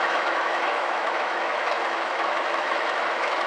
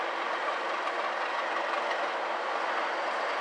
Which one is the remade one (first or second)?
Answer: first